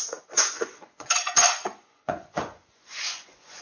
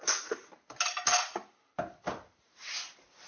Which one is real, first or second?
second